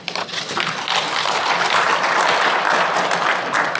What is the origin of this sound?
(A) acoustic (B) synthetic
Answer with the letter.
A